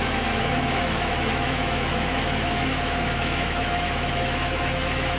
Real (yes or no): no